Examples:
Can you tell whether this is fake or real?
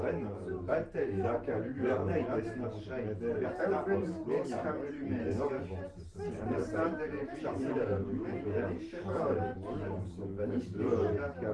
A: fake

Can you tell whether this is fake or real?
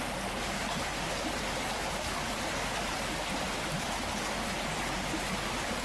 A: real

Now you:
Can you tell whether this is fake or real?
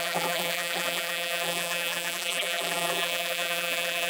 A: fake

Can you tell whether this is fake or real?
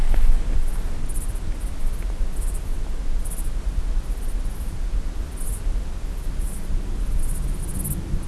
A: real